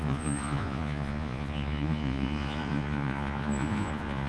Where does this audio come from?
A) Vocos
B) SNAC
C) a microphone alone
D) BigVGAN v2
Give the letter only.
A